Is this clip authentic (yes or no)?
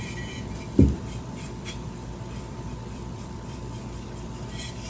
no